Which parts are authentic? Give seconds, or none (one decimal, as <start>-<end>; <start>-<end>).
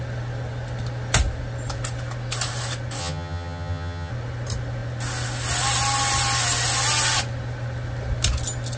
0.0-3.0; 4.1-8.8